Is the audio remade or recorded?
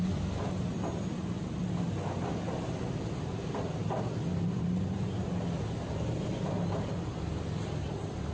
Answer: recorded